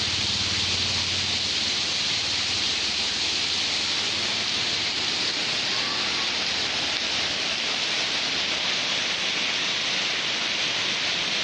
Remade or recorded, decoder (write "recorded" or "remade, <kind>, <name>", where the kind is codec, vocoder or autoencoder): recorded